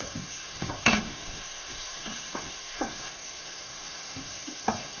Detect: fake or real fake